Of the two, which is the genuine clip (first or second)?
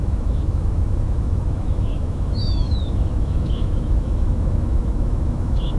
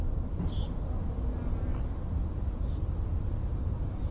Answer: second